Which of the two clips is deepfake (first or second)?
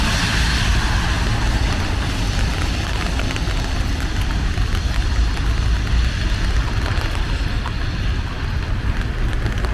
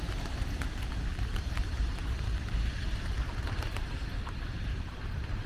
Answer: second